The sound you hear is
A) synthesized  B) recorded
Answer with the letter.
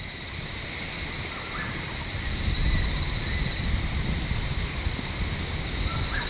B